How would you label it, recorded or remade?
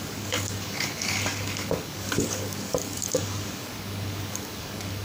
remade